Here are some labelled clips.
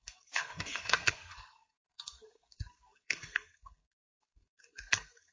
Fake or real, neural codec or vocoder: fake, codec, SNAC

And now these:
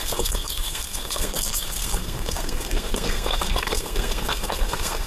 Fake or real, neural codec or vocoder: fake, codec, SNAC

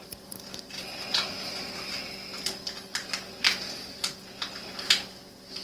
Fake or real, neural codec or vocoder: real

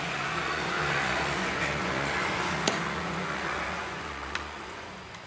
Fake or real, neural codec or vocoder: fake, vocoder, Vocos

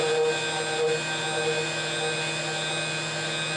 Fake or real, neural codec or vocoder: real